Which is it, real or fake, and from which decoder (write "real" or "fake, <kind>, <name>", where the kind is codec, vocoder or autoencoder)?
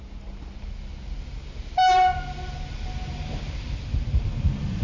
real